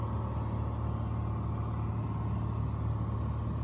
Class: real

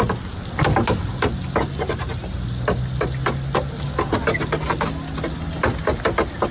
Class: real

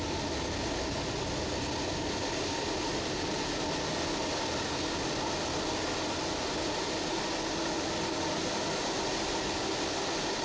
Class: real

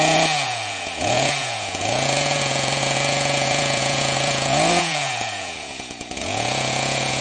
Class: fake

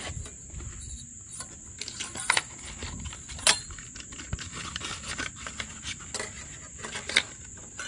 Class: real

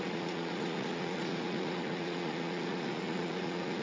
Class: fake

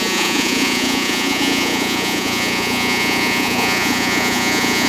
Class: fake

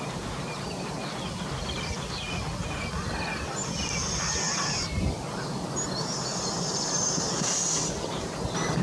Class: real